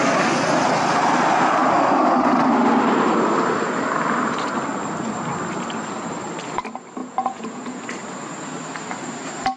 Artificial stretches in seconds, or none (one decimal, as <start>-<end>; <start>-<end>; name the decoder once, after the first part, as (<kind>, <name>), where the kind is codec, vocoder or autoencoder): 7.0-7.8 (vocoder, Vocos)